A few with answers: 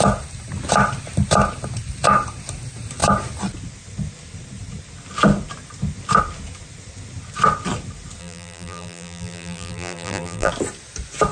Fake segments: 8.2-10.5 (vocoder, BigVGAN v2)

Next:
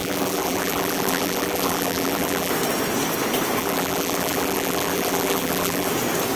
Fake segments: 0.0-2.5 (vocoder, BigVGAN v2); 3.6-5.9